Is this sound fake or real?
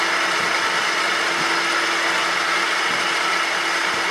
real